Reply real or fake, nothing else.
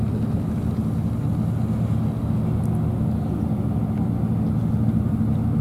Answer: real